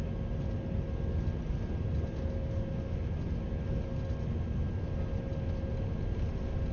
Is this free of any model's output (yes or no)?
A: yes